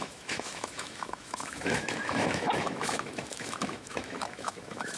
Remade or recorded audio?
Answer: remade